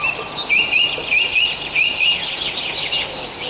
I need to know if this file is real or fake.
real